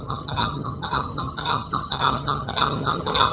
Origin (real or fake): fake